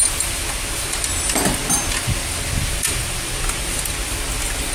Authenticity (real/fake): real